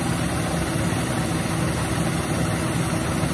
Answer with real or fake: real